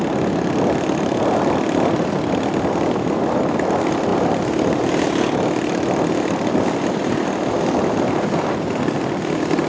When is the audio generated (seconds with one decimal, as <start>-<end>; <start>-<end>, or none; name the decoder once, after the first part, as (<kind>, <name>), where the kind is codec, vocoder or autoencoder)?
none